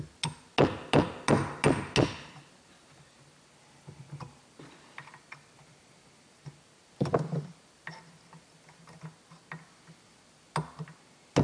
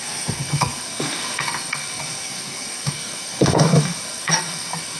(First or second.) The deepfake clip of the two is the second